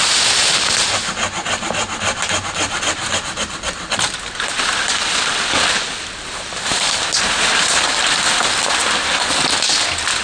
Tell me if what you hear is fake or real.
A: real